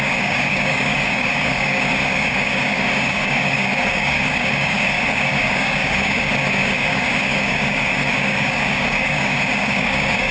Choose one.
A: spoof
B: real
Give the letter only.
A